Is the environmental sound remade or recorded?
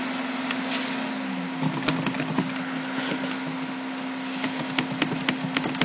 recorded